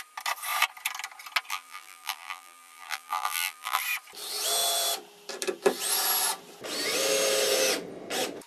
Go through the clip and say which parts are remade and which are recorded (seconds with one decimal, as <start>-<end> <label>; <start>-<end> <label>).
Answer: 0.0-1.5 recorded; 1.5-3.8 remade; 3.8-8.5 recorded